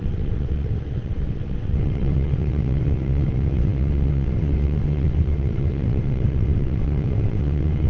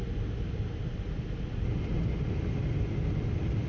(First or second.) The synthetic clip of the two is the first